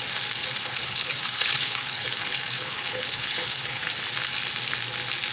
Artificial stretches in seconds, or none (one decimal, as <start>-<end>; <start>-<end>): 0.6-3.8